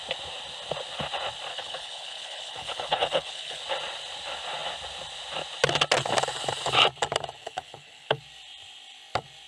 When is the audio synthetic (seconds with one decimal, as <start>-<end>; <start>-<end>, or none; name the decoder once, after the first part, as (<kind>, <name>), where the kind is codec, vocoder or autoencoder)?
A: 1.5-3.6 (codec, HILCodec); 7.4-8.2